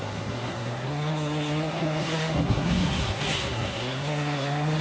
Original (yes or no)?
no